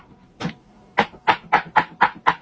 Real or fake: real